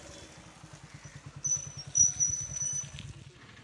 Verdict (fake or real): real